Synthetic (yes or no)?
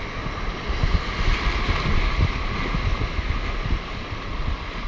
no